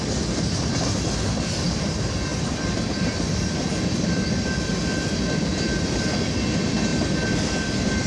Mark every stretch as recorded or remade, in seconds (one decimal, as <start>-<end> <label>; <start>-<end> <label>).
0.0-2.3 recorded; 2.3-5.8 remade; 5.8-8.1 recorded